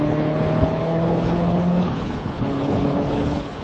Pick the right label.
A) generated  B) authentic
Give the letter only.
A